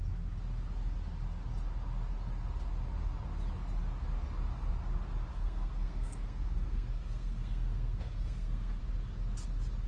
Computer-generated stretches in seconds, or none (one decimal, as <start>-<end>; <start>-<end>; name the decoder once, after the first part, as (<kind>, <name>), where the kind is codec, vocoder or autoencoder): 5.3-8.8 (codec, SNAC)